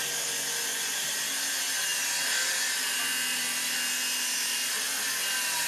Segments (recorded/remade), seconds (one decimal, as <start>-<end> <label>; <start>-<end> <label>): 0.0-5.7 recorded